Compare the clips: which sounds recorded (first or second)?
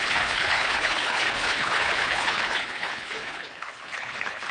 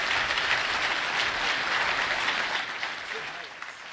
second